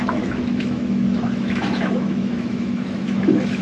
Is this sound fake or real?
fake